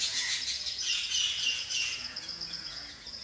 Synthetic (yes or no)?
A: yes